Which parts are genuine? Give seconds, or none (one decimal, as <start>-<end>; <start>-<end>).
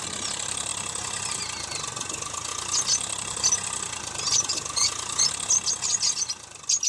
0.0-6.9